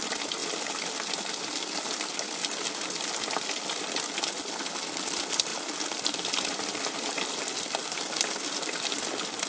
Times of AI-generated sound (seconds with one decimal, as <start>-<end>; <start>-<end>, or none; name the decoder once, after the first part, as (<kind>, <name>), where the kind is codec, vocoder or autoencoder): 0.4-0.9 (vocoder, BigVGAN v2); 5.5-7.3; 7.8-9.1